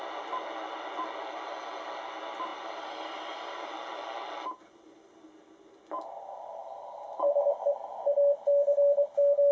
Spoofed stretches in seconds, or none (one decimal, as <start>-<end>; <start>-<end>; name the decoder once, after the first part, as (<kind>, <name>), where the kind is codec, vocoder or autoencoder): 2.5-3.7 (vocoder, BigVGAN v2)